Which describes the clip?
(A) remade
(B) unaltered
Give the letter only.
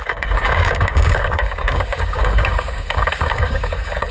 A